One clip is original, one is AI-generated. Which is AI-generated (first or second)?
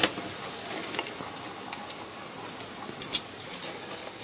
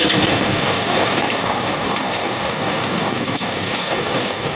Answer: second